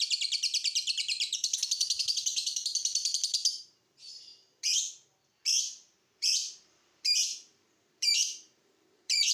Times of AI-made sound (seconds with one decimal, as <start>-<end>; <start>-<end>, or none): 0.0-4.3; 5.6-9.3